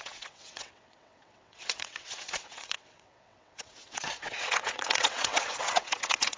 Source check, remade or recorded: remade